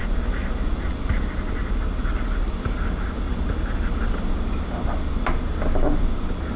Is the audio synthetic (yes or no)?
no